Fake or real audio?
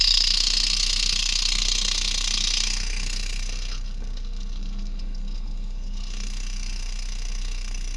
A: fake